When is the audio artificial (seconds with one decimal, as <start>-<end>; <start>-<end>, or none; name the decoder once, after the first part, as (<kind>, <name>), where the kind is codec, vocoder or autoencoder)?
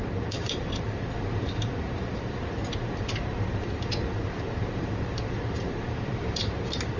0.0-7.0 (vocoder, BigVGAN v2)